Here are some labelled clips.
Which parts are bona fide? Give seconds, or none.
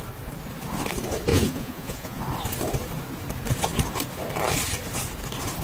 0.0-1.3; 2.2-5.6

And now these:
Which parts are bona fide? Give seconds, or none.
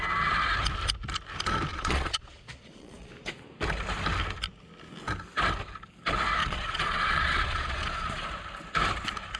0.0-1.7; 3.1-6.4; 8.3-9.4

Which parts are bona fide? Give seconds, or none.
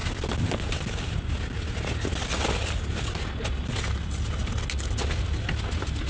0.0-6.1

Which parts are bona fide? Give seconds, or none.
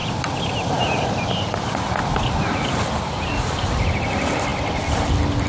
0.0-5.5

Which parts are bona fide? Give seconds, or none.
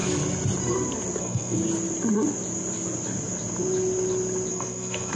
0.0-1.2; 1.6-4.5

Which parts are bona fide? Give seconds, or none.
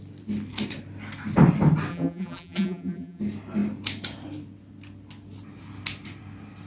0.0-1.9; 3.2-6.7